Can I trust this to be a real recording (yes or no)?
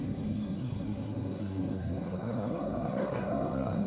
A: no